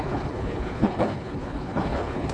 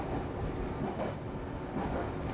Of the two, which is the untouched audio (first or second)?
second